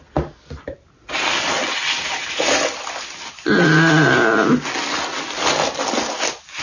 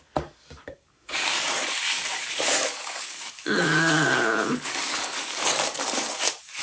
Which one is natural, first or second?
first